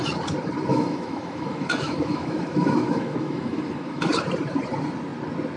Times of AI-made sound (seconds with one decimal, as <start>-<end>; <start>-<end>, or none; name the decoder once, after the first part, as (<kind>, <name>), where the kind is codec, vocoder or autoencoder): 0.7-4.1 (autoencoder, DAC-VAE)

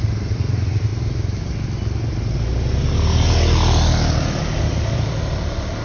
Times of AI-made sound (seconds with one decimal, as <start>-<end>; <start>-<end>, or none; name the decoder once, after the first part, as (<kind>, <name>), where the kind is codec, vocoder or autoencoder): 0.0-0.9 (vocoder, BigVGAN v2); 4.4-5.8